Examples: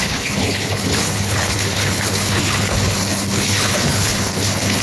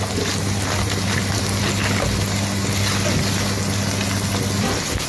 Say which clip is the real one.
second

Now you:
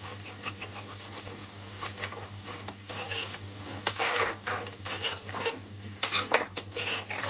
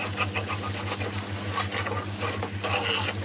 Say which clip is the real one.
second